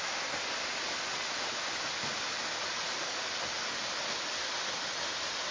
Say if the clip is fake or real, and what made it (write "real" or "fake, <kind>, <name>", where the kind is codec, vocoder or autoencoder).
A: real